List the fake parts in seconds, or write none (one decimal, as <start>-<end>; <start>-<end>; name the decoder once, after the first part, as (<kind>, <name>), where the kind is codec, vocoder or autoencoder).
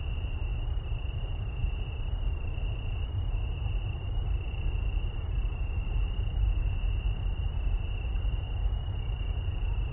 0.0-9.9 (vocoder, BigVGAN v2)